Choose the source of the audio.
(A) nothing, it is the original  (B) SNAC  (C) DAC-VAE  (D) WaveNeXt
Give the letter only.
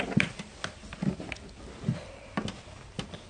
A